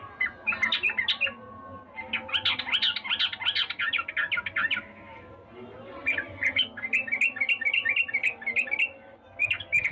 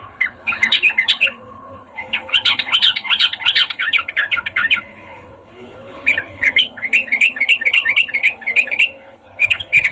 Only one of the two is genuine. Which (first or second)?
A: first